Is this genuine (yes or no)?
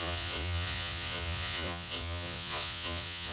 no